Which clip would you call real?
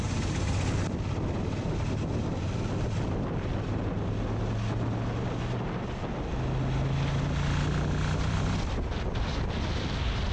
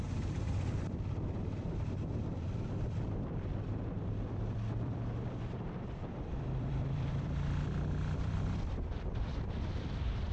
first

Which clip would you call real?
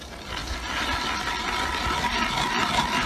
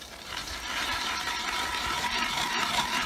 first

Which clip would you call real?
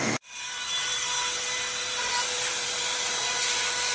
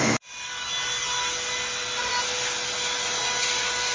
second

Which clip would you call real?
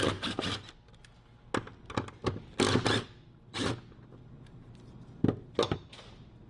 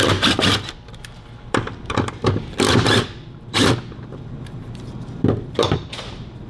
first